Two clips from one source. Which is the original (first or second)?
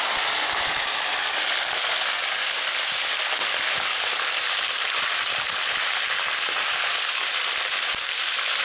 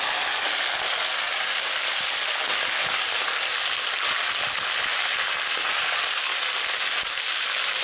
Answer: second